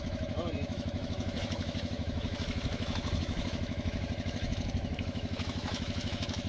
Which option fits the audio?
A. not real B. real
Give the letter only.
A